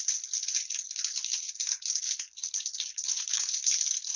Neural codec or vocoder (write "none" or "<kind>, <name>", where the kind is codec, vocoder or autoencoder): codec, HILCodec